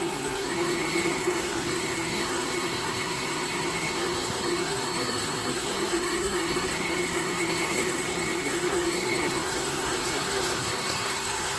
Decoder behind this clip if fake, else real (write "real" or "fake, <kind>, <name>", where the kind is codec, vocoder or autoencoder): fake, codec, SNAC